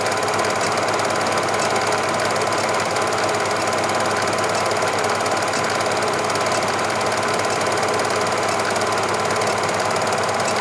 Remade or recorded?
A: recorded